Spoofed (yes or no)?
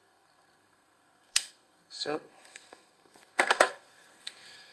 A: yes